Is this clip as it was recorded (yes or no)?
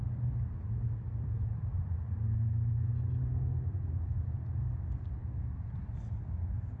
yes